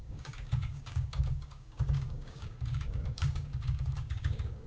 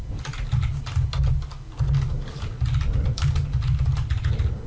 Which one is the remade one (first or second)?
first